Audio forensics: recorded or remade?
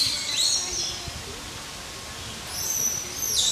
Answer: recorded